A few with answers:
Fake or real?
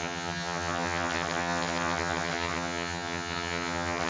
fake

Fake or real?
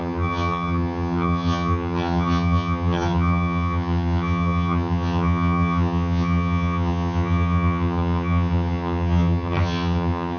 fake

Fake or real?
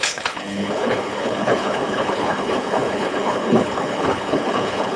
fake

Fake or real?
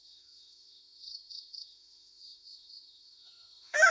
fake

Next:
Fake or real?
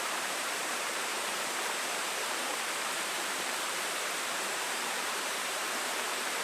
fake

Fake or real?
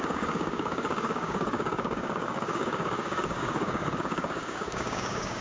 fake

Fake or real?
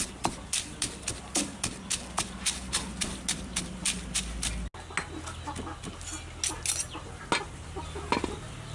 real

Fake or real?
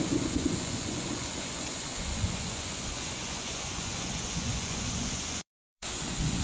fake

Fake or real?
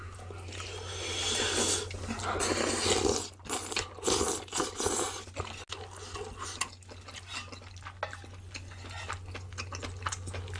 real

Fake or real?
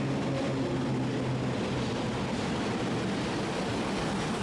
real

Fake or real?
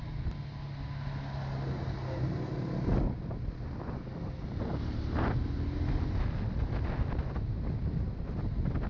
real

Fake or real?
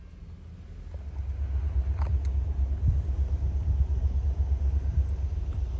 real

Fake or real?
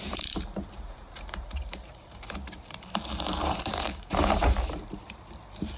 fake